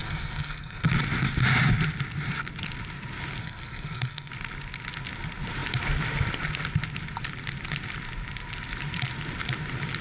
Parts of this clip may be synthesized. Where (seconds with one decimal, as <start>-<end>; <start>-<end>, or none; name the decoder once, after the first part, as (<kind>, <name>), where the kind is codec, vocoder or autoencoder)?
0.0-0.9 (codec, SNAC); 3.4-4.3